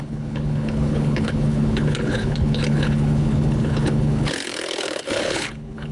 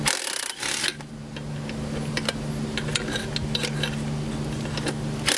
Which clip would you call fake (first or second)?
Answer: first